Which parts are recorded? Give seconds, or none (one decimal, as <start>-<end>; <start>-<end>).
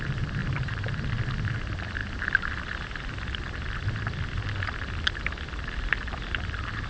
0.0-0.4; 1.1-6.9